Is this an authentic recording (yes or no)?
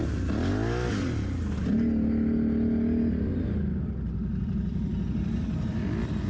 yes